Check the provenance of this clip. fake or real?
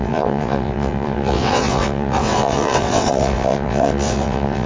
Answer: fake